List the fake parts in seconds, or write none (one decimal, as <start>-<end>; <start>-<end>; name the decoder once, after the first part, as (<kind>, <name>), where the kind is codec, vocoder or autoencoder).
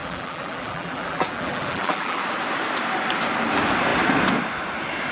0.0-2.2 (vocoder, BigVGAN v2)